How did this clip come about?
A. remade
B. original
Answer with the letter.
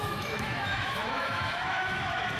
A